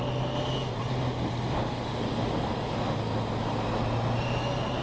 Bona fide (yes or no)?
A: yes